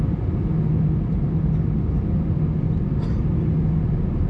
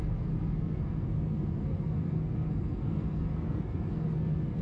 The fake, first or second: second